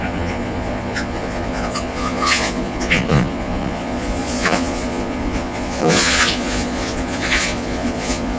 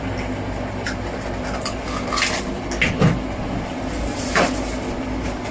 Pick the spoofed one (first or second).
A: first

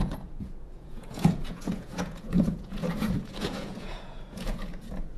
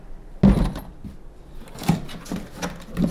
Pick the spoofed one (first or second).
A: first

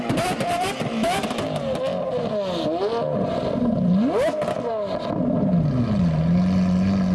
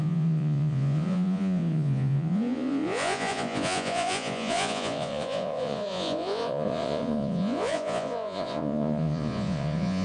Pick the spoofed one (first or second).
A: second